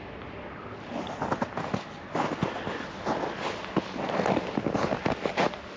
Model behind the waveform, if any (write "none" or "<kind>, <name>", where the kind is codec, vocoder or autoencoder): none